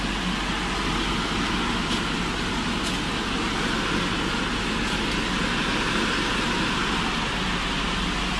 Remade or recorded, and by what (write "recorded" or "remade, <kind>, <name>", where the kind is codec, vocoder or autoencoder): recorded